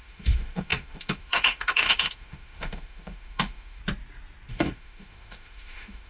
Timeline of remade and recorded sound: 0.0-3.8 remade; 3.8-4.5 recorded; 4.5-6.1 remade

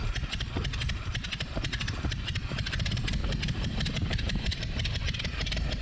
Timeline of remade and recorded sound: 0.0-3.2 recorded; 3.2-5.0 remade; 5.0-5.8 recorded